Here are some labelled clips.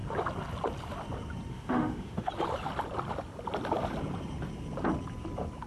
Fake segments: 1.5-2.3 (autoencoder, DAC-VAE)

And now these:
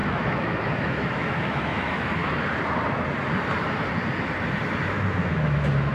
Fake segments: 0.0-2.2 (autoencoder, DAC-VAE); 4.9-5.9

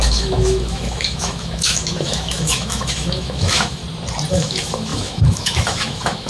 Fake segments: 0.0-3.8 (autoencoder, DAC-VAE); 4.3-6.3

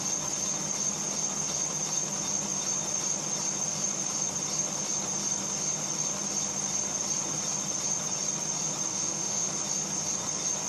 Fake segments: 8.9-9.5 (autoencoder, DAC-VAE)

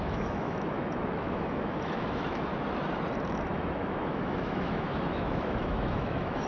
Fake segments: 0.0-2.5 (autoencoder, DAC-VAE); 3.1-6.5